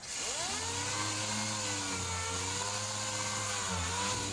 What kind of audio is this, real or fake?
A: real